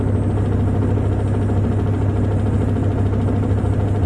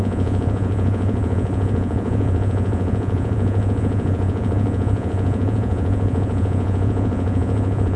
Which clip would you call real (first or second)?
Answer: first